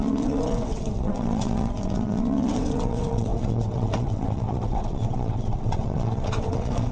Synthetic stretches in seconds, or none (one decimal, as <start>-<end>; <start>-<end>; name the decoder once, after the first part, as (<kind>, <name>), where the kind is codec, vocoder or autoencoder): 0.0-6.9 (vocoder, WaveNeXt)